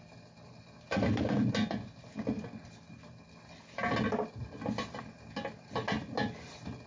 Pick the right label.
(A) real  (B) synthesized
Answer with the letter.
A